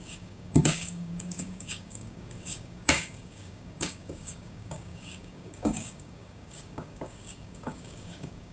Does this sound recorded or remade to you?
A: remade